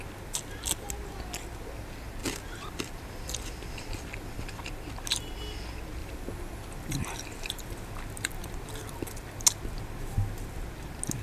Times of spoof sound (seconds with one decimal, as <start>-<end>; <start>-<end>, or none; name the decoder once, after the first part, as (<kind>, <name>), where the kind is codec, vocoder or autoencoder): 2.2-4.7 (vocoder, BigVGAN v2); 6.0-7.7